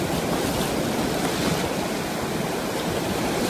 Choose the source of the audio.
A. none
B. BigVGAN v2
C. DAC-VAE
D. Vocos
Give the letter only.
A